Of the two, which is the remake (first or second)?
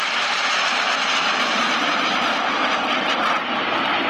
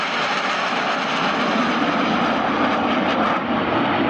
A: first